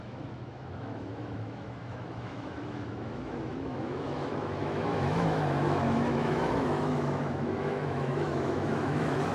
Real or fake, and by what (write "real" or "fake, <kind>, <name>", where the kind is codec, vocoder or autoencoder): fake, autoencoder, DAC-VAE